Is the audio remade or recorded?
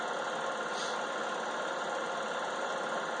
recorded